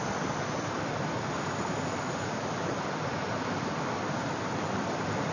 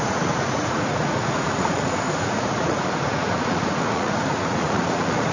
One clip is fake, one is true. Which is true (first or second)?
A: first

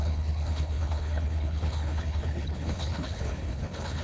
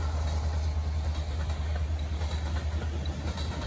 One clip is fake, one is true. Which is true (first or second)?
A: second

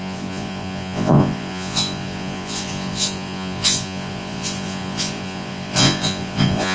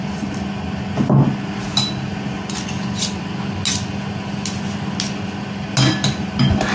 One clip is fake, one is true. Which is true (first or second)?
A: second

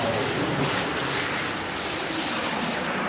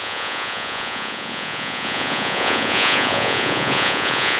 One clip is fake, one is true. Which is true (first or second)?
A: first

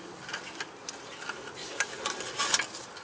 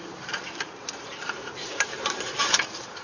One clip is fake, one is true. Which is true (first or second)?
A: first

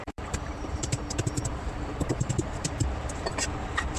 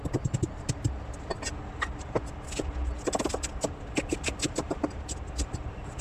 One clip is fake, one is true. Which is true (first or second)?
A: second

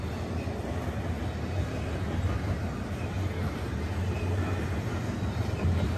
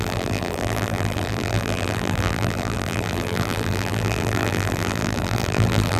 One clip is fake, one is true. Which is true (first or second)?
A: first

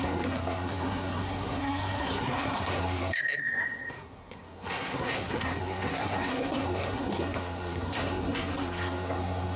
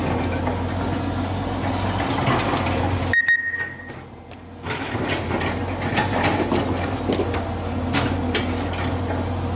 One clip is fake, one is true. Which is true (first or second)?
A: second